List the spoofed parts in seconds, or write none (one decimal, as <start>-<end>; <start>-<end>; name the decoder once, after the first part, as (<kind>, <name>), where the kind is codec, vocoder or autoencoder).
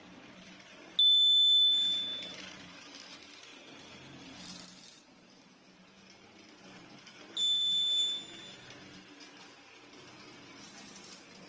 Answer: none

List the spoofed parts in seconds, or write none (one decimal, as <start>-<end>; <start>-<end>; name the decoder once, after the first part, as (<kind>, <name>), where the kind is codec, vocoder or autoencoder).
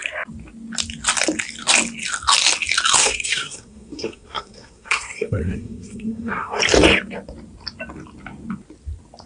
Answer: 3.0-6.6 (codec, SNAC)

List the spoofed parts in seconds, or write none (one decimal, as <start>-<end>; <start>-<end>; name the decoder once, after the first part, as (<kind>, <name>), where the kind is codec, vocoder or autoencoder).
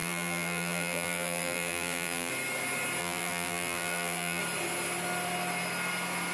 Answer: 0.0-2.3 (vocoder, BigVGAN v2); 3.0-4.4